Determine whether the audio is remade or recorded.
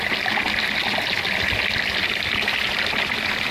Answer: recorded